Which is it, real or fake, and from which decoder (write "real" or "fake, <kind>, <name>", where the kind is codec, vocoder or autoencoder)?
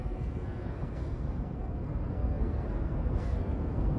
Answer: fake, codec, SNAC